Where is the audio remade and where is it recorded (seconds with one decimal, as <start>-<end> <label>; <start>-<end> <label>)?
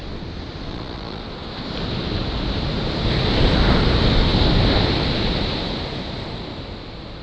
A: 0.0-0.7 recorded; 0.7-1.2 remade; 1.2-7.2 recorded